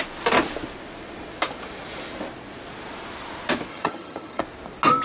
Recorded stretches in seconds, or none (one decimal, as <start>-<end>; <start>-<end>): 0.0-3.7; 4.4-5.0